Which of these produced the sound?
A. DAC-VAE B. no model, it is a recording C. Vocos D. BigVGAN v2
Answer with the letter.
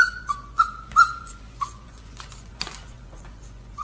C